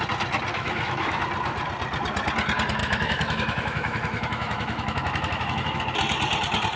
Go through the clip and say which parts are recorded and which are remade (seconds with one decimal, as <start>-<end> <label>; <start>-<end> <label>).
0.0-0.5 recorded; 0.5-1.2 remade; 1.2-2.8 recorded; 2.8-5.8 remade; 5.8-6.8 recorded